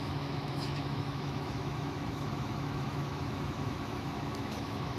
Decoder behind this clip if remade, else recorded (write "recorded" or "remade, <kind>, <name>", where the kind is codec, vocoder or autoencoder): remade, autoencoder, DAC-VAE